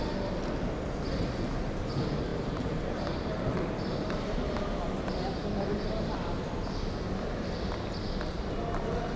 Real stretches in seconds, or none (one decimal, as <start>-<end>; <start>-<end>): 0.0-2.3; 4.3-9.2